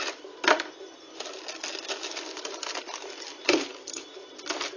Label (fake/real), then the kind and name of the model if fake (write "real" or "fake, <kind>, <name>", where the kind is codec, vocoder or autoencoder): real